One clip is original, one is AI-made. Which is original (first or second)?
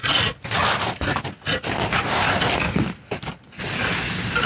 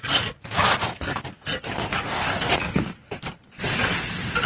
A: first